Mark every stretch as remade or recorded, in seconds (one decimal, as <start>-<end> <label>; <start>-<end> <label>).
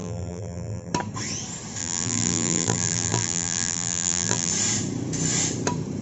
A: 0.0-0.9 remade; 0.9-1.8 recorded; 1.8-4.5 remade; 4.5-6.0 recorded